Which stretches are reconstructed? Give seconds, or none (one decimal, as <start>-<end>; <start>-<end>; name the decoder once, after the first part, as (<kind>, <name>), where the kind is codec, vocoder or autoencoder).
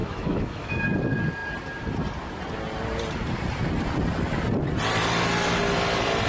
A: 0.0-0.8 (autoencoder, DAC-VAE)